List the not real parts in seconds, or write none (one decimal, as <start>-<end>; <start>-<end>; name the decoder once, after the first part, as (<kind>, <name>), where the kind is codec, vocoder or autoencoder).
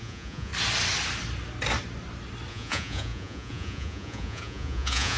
0.0-0.5 (vocoder, Vocos); 2.5-5.2